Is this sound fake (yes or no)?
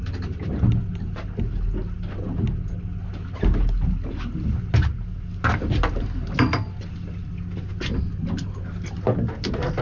no